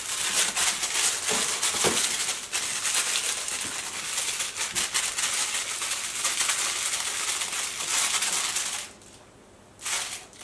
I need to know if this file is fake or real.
real